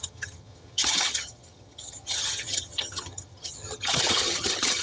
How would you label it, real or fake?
fake